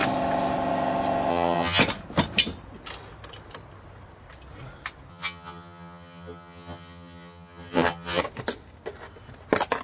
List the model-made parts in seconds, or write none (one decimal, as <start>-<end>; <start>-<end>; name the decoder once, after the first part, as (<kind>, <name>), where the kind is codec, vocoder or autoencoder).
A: 1.3-1.8 (vocoder, HiFi-GAN); 5.1-8.2